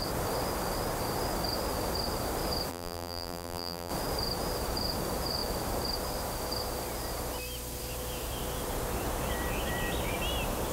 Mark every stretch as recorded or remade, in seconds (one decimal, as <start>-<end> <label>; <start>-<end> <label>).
0.0-2.7 recorded; 2.7-3.9 remade; 3.9-10.7 recorded